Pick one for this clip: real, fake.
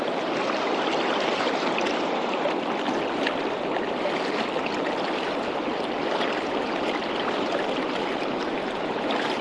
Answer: real